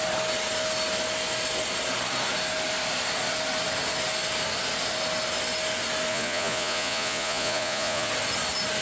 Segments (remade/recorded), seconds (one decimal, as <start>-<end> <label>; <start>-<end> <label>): 0.0-6.1 recorded; 6.1-8.1 remade; 8.1-8.8 recorded